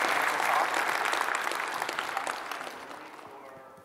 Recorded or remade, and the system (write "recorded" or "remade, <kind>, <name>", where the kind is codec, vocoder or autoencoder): recorded